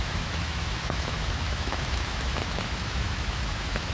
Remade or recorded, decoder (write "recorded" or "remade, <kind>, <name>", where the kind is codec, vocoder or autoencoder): remade, autoencoder, DAC-VAE